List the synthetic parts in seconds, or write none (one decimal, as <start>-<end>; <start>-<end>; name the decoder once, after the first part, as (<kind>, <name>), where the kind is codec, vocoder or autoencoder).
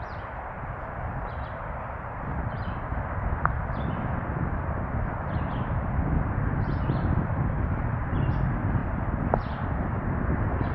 5.1-5.9 (vocoder, BigVGAN v2)